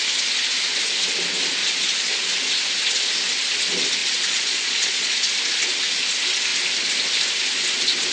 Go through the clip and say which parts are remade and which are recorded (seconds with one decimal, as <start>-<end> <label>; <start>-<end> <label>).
0.0-1.6 recorded; 1.6-2.2 remade; 2.2-4.0 recorded; 4.0-5.3 remade; 5.3-8.1 recorded